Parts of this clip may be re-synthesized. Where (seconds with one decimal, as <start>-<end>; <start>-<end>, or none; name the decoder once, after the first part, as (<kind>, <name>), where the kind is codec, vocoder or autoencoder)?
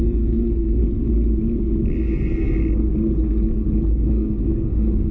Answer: 0.0-0.8 (codec, SNAC); 3.9-5.1